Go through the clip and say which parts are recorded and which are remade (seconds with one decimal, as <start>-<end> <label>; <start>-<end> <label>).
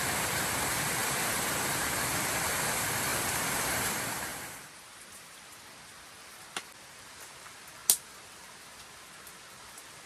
0.0-1.0 recorded; 1.0-1.9 remade; 1.9-3.1 recorded; 3.1-3.9 remade; 3.9-4.3 recorded; 4.3-5.5 remade; 5.5-10.1 recorded